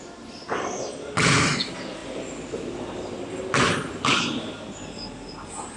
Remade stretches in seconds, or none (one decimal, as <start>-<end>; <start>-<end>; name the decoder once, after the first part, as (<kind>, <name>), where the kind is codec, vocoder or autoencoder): none